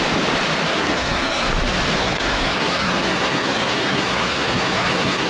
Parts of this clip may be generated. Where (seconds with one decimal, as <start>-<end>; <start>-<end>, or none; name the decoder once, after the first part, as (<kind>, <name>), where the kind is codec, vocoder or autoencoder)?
0.8-1.5 (codec, SNAC); 2.0-5.3